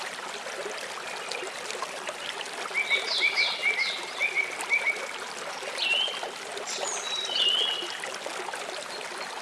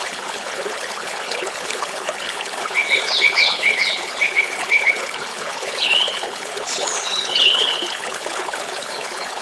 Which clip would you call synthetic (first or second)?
second